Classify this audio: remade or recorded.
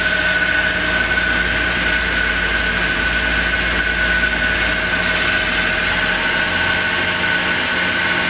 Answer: recorded